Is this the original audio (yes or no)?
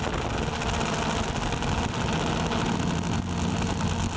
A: yes